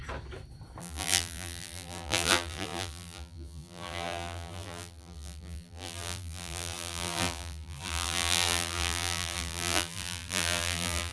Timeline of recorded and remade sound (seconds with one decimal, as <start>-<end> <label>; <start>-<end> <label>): 0.0-0.8 recorded; 0.8-11.1 remade